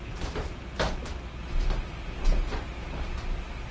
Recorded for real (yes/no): yes